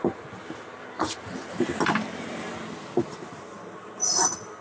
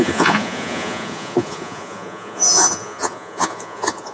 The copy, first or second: second